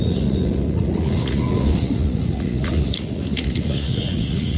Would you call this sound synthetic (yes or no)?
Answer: yes